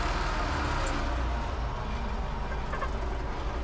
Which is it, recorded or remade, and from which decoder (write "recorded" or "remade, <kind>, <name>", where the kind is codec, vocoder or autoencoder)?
recorded